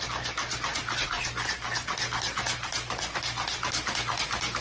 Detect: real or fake real